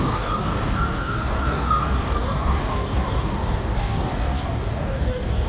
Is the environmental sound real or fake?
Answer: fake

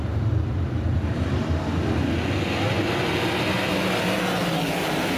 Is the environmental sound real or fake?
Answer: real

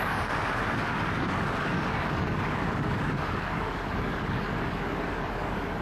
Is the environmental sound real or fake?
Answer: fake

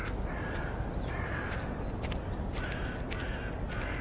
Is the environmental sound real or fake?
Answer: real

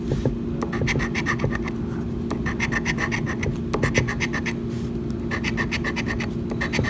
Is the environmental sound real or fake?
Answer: real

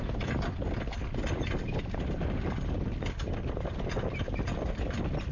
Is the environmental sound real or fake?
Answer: real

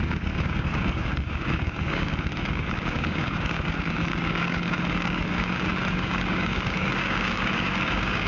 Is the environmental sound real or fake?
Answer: fake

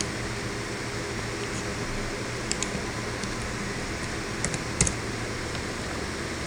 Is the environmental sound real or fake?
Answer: real